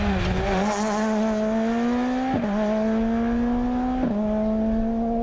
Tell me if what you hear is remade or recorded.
recorded